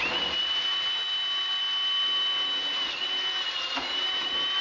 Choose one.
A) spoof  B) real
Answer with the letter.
B